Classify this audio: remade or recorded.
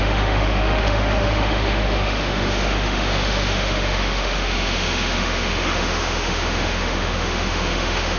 remade